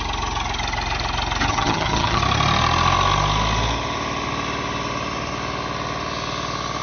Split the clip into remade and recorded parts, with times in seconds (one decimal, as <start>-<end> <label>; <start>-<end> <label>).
0.0-1.5 recorded; 1.5-2.2 remade; 2.2-6.8 recorded